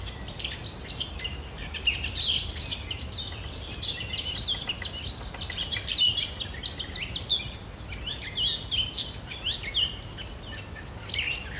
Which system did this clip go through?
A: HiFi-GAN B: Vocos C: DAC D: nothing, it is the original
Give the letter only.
D